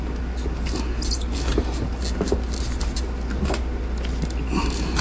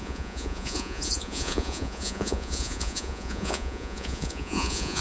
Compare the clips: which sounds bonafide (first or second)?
first